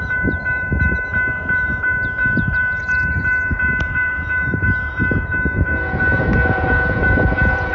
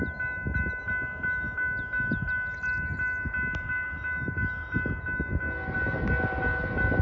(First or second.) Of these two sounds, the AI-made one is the first